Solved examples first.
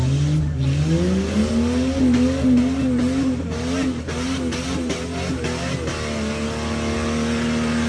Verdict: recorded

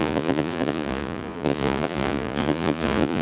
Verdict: remade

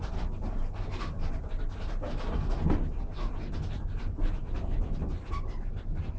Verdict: recorded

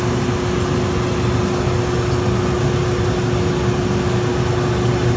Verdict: recorded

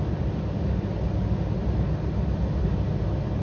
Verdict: remade